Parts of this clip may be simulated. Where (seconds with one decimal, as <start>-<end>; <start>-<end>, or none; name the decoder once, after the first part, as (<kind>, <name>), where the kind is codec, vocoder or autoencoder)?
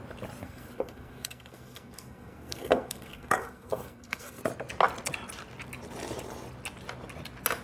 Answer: 0.4-4.4 (codec, SNAC)